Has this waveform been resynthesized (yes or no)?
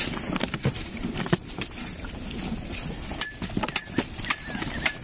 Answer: yes